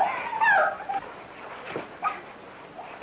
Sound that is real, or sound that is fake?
real